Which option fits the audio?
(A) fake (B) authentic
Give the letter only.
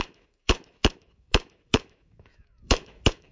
A